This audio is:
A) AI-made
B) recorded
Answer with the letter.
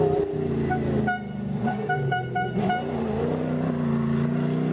B